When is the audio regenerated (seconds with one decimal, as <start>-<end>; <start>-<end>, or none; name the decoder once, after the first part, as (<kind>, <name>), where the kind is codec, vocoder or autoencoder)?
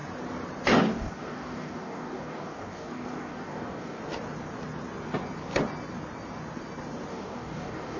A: 0.9-4.0 (codec, DAC); 7.1-8.0